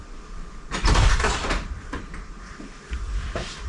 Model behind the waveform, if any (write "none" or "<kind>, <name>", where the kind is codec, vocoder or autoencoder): vocoder, BigVGAN v2